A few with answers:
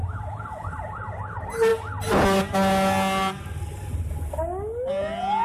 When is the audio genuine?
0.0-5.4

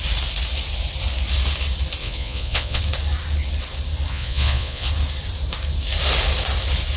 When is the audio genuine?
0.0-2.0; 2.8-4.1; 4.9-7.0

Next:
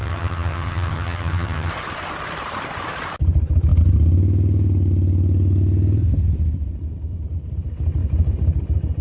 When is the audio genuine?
1.7-9.0

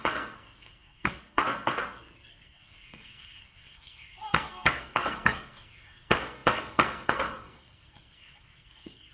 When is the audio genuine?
none

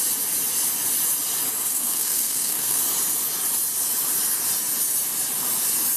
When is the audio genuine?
0.0-1.7; 2.8-6.0

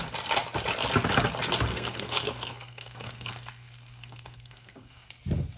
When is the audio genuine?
0.0-1.7; 5.1-5.6